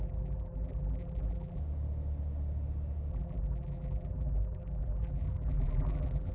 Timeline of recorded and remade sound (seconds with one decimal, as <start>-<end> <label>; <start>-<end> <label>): 0.0-1.6 remade; 1.6-3.1 recorded; 3.1-6.3 remade